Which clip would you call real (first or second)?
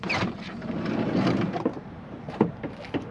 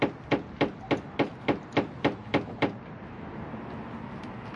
second